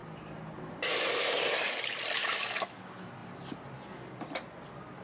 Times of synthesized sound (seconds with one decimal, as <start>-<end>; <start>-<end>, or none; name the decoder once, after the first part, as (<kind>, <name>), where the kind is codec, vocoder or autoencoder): 2.2-2.8 (autoencoder, DAC-VAE)